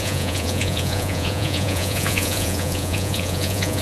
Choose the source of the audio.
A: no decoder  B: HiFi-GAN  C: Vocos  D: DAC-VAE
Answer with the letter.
C